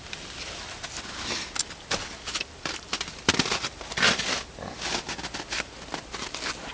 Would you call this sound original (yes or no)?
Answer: yes